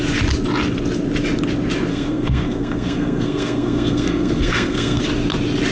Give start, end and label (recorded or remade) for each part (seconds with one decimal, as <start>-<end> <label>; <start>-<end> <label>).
0.0-1.9 recorded; 1.9-5.0 remade; 5.0-5.7 recorded